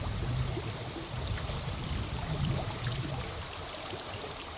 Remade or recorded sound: recorded